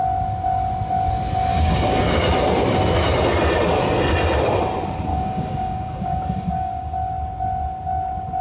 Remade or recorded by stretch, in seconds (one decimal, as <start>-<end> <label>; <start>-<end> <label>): 0.0-1.5 recorded; 1.5-2.0 remade; 2.0-5.1 recorded; 5.1-6.8 remade; 6.8-8.4 recorded